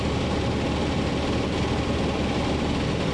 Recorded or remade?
recorded